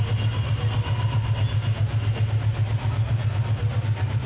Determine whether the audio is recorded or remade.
recorded